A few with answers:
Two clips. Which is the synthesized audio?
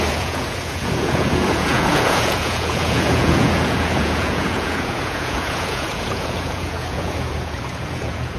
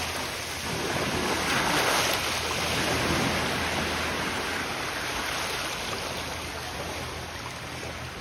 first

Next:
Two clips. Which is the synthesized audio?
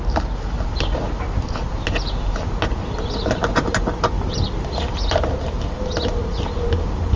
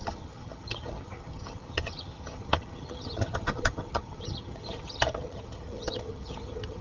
second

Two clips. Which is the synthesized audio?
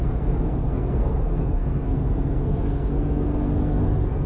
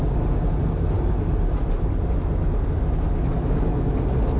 first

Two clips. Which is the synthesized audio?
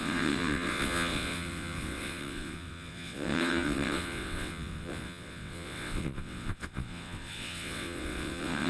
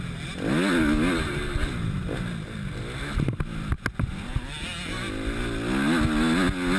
first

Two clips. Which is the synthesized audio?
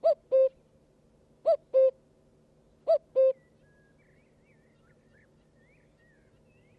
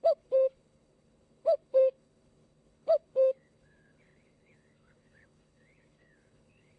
second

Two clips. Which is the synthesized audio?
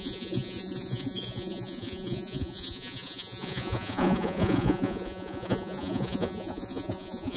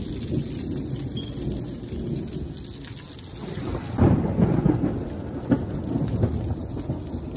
first